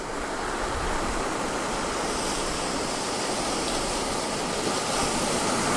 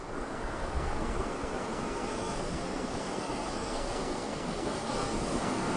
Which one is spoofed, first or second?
second